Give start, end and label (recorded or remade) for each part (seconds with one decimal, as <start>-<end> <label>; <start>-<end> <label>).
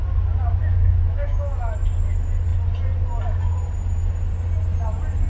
0.0-0.6 recorded; 0.6-1.5 remade; 1.5-5.3 recorded